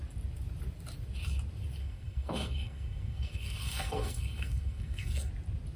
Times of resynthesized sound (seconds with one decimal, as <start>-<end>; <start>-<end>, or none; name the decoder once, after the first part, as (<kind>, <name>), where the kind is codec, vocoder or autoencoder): 1.8-5.3 (codec, SNAC)

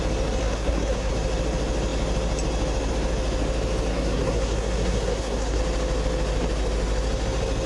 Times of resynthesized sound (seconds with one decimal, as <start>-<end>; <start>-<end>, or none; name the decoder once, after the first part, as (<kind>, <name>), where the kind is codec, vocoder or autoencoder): 0.4-1.1 (codec, SNAC); 3.9-5.6

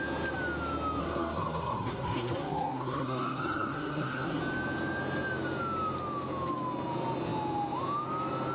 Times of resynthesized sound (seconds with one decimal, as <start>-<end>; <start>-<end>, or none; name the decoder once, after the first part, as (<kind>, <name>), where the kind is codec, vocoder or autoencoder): 1.0-4.4 (codec, SNAC)

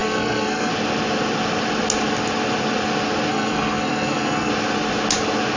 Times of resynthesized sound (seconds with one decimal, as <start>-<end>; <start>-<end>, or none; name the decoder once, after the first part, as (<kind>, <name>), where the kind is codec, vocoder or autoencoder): 0.0-0.7 (codec, SNAC); 3.3-4.5

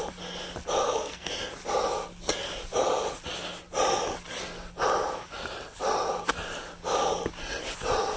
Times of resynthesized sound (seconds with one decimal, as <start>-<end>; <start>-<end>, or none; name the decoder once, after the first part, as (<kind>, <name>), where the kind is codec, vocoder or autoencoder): 0.8-1.3 (codec, SNAC)

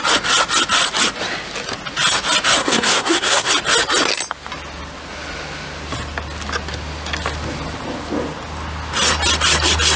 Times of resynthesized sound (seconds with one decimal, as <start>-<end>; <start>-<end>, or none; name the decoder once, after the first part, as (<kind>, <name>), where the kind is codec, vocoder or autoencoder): 2.6-3.5 (codec, SNAC)

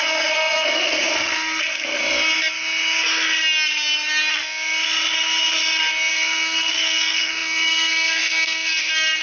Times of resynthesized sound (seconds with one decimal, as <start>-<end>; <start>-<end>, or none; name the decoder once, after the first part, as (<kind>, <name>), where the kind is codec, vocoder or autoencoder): 0.0-2.0 (codec, SNAC); 6.1-9.2

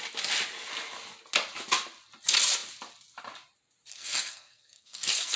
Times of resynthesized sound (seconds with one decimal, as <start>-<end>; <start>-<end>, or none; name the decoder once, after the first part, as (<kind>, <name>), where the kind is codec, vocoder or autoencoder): 3.9-5.4 (codec, SNAC)